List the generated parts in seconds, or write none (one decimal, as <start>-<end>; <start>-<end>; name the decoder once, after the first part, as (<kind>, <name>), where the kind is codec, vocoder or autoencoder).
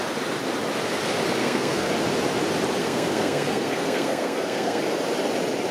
1.4-1.9 (codec, SNAC); 2.8-4.8